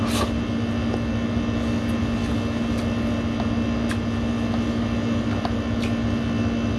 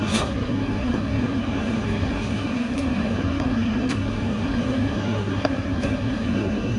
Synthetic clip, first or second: second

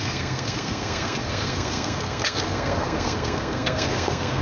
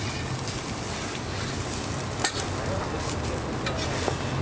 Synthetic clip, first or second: first